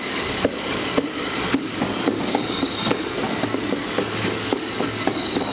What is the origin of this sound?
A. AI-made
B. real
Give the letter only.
A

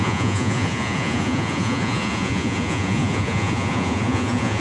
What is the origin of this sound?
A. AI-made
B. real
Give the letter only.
A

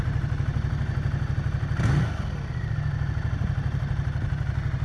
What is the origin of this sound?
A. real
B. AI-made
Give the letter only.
A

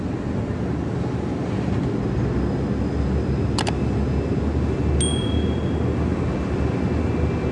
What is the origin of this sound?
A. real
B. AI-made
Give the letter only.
A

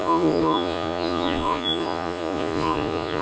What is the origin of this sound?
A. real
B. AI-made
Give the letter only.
B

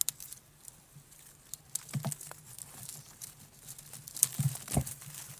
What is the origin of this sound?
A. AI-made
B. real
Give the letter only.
B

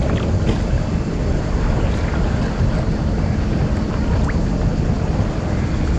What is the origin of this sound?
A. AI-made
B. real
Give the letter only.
B